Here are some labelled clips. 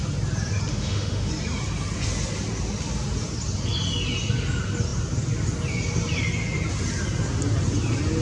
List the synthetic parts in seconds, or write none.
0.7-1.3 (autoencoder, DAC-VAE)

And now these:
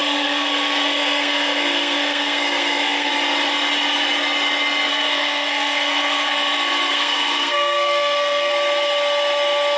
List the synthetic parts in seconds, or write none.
0.0-3.1 (codec, SNAC); 4.9-8.5

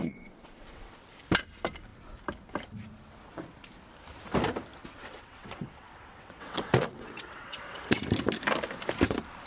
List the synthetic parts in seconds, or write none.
0.0-1.2 (vocoder, WaveNeXt); 4.8-8.0

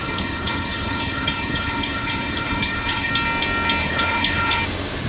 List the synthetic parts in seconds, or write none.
0.0-3.1 (codec, HILCodec); 3.8-4.6

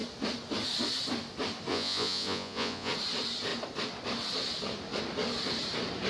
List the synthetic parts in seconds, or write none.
1.7-2.9 (vocoder, Vocos)